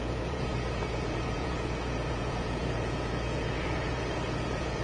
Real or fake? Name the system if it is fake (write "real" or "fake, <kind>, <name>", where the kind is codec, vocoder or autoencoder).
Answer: fake, vocoder, Vocos